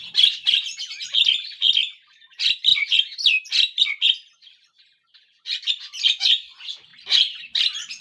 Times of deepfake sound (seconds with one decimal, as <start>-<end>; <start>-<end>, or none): 2.7-5.7; 6.9-7.6